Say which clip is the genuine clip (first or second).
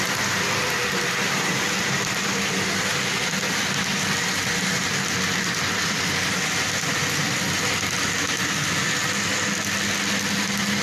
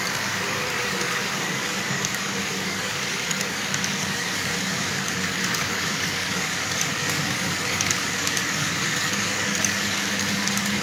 first